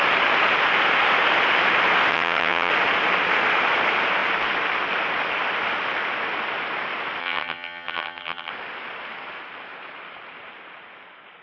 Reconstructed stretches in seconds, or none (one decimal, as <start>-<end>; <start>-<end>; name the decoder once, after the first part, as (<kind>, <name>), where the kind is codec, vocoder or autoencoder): 2.1-2.7 (vocoder, HiFi-GAN); 7.2-8.5